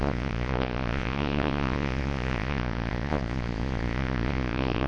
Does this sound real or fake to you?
fake